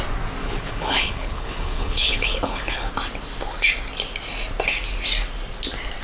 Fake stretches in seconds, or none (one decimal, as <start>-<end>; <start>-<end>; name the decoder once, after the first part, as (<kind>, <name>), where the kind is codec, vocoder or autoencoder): 0.4-2.9 (codec, HILCodec)